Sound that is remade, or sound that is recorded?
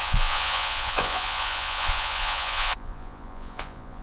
remade